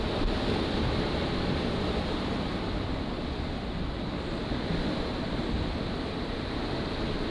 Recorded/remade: recorded